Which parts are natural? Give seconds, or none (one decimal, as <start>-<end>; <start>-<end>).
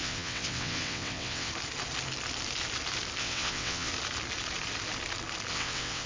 1.5-3.2; 3.9-5.5